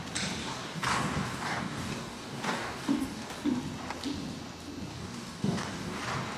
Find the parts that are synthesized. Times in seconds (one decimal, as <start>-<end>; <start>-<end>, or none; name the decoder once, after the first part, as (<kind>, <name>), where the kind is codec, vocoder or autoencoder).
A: 0.4-3.3 (codec, DAC); 4.9-6.0